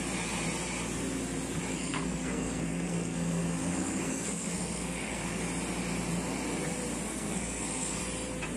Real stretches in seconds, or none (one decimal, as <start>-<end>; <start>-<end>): 0.0-1.7; 5.4-7.1; 8.0-8.6